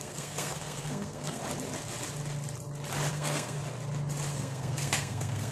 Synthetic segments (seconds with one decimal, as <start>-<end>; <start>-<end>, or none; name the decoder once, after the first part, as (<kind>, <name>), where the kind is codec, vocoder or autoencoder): 0.0-1.4 (codec, SNAC); 3.1-3.6; 4.3-5.5